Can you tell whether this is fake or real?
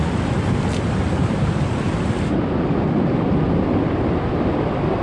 real